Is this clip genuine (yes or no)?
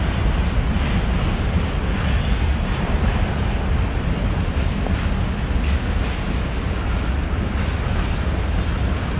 yes